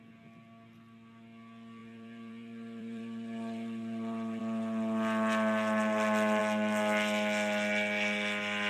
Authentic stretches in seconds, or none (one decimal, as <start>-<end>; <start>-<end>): 0.0-1.8; 4.4-8.7